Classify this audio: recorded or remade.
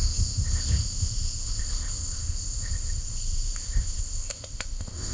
remade